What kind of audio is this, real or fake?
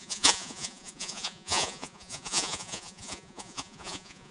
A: fake